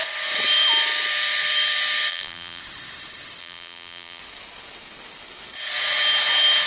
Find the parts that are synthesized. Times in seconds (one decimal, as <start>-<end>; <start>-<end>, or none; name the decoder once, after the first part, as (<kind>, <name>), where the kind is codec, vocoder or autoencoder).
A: 2.1-2.6 (vocoder, BigVGAN v2); 3.4-4.2